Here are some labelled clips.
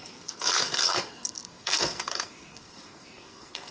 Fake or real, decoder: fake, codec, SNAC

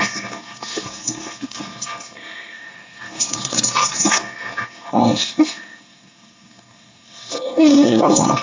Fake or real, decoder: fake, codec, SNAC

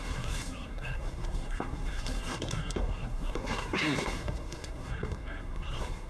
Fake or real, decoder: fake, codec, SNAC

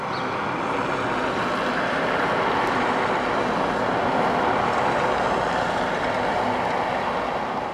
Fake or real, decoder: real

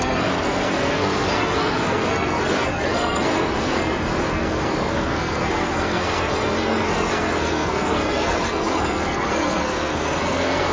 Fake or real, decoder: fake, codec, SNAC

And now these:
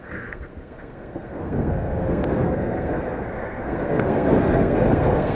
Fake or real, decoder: fake, codec, SNAC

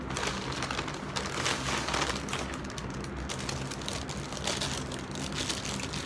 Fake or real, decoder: real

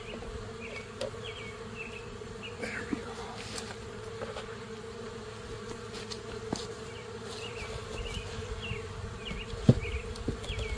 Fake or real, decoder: real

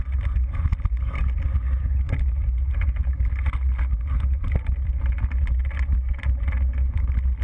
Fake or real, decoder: real